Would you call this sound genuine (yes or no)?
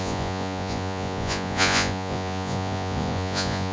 no